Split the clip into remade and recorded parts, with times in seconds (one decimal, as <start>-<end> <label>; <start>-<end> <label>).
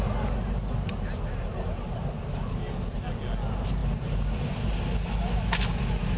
0.0-3.8 recorded; 3.8-4.8 remade; 4.8-6.2 recorded